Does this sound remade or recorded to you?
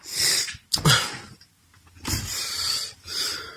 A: recorded